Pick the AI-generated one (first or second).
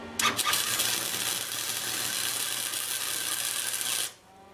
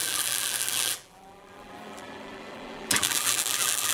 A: second